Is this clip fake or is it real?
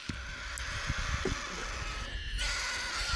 real